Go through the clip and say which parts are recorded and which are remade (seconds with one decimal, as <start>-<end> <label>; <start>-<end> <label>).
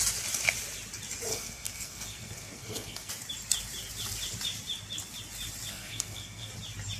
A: 0.0-1.3 recorded; 1.3-3.1 remade; 3.1-5.7 recorded; 5.7-6.5 remade; 6.5-7.0 recorded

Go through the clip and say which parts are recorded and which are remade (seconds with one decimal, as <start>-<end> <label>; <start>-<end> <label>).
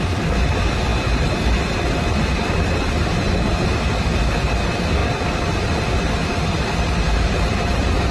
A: 0.0-8.1 recorded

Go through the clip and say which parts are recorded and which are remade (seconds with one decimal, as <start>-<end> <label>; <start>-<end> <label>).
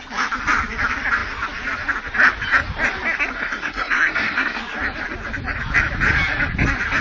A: 0.0-3.3 recorded; 3.3-4.6 remade; 4.6-7.0 recorded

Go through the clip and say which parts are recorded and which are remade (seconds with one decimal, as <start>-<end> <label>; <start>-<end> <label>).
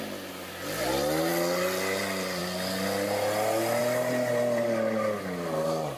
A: 0.0-6.0 recorded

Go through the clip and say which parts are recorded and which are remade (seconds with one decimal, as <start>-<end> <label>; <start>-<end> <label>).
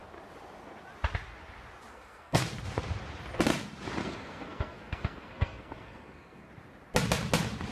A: 0.0-1.9 recorded; 1.9-2.4 remade; 2.4-4.0 recorded; 4.0-6.5 remade; 6.5-7.7 recorded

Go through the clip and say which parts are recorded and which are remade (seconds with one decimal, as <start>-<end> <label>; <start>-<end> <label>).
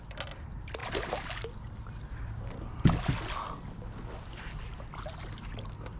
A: 0.0-6.0 recorded